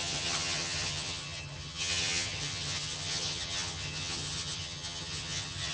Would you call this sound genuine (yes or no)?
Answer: no